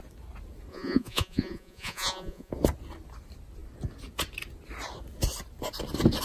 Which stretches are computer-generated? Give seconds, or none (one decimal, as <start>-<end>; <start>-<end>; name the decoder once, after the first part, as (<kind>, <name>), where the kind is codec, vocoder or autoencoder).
0.7-2.5 (vocoder, Vocos)